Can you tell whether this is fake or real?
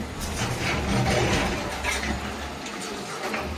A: real